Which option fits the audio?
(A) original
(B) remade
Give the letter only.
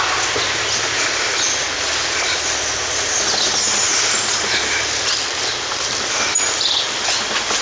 A